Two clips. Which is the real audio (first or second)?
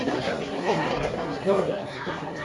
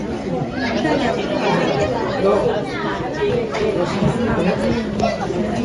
second